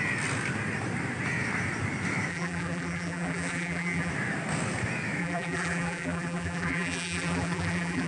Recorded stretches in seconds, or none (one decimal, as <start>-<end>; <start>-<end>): 0.0-2.3; 4.1-5.2